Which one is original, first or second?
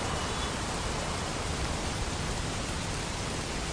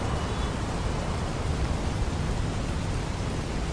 second